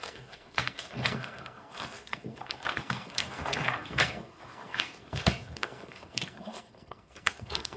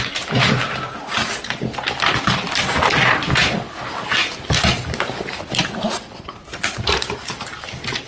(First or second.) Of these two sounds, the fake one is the first